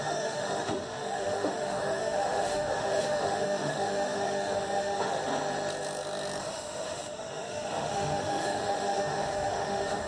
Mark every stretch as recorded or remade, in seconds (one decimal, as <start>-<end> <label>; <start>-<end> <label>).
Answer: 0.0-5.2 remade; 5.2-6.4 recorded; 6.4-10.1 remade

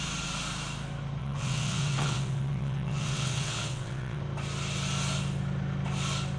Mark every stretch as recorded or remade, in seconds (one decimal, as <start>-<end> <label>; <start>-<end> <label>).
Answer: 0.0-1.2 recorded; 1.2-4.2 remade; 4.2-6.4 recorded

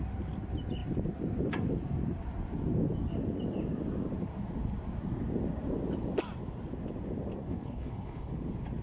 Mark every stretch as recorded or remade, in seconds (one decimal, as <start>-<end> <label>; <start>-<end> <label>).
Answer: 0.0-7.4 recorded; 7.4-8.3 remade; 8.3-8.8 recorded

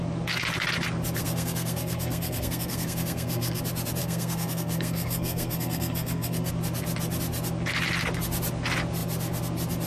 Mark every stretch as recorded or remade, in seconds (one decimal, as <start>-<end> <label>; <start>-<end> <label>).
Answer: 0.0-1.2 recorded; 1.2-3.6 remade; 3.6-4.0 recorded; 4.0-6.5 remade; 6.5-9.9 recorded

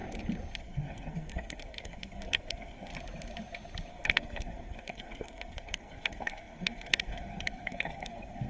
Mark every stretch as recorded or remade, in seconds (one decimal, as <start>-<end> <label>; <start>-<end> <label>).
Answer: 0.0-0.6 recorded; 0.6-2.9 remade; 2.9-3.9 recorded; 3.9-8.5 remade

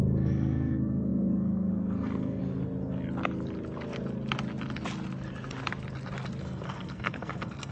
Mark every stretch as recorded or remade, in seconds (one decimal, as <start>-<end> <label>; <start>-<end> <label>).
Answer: 0.0-2.4 remade; 2.4-6.4 recorded; 6.4-7.7 remade

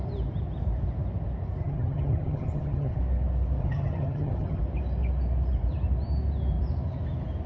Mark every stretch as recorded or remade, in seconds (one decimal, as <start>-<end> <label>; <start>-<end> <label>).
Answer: 0.0-1.6 recorded; 1.6-3.0 remade; 3.0-3.6 recorded; 3.6-4.6 remade; 4.6-7.5 recorded

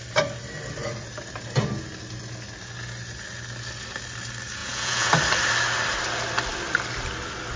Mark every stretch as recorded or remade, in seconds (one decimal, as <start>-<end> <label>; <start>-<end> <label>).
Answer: 0.0-4.6 recorded; 4.6-5.1 remade; 5.1-7.6 recorded